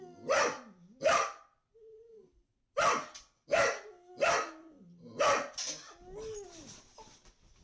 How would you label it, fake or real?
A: real